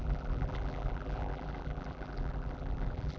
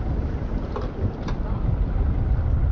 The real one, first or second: second